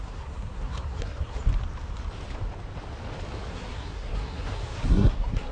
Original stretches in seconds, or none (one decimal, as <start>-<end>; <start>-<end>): 1.4-3.5